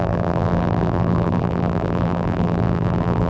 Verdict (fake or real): fake